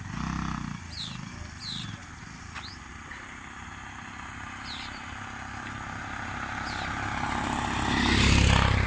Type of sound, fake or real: real